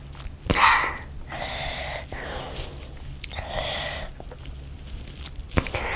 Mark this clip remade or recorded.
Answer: recorded